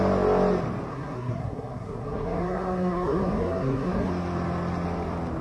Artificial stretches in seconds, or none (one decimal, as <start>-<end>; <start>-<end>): 0.9-4.1